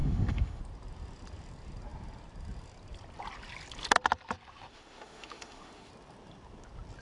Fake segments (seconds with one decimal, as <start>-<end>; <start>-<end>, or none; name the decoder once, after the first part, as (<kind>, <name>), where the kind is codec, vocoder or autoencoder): 0.0-0.6 (autoencoder, DAC-VAE); 4.7-5.9